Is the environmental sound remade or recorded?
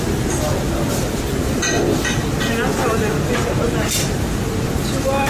recorded